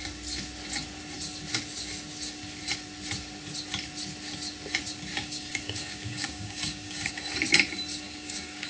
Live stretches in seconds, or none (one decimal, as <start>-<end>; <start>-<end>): 0.0-5.1; 7.1-7.9